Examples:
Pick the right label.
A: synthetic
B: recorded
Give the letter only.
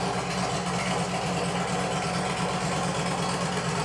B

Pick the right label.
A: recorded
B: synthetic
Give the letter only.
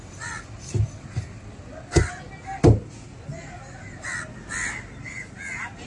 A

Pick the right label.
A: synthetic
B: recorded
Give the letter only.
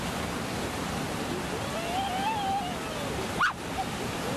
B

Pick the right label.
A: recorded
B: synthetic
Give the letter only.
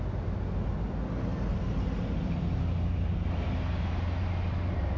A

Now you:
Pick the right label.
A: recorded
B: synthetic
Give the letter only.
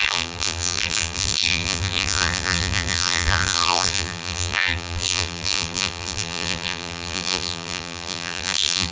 B